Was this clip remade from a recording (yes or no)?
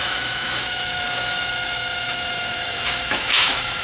yes